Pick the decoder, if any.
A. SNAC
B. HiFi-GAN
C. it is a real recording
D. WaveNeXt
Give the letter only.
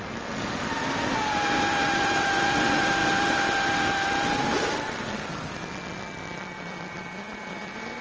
C